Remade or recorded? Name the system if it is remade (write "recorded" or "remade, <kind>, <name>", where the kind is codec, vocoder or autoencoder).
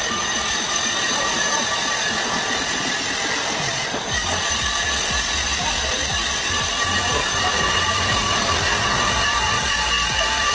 remade, vocoder, BigVGAN v2